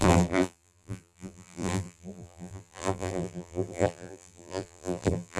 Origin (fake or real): fake